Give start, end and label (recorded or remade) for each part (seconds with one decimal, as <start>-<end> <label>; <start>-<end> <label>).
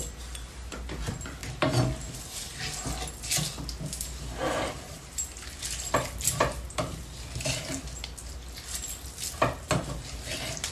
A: 0.0-10.7 recorded